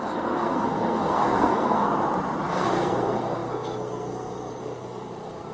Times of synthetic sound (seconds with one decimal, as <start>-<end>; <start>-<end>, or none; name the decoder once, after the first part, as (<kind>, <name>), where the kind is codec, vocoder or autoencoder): 0.0-1.9 (codec, SNAC); 2.5-5.5